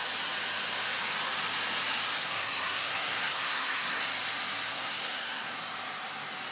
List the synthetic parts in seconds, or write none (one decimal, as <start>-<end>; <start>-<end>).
2.2-4.0; 4.7-5.5

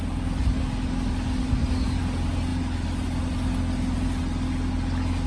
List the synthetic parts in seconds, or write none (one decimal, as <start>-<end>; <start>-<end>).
none

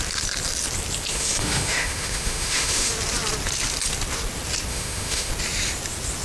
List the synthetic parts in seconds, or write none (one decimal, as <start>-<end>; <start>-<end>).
1.1-2.9; 4.7-5.3

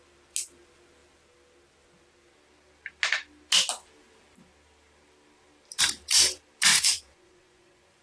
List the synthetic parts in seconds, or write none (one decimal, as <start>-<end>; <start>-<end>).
6.7-8.0

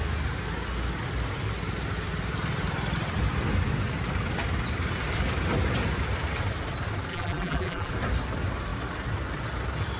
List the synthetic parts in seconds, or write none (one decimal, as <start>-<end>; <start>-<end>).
7.1-7.9

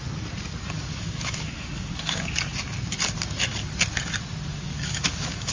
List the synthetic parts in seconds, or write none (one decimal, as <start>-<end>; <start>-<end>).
0.9-2.3; 4.5-5.5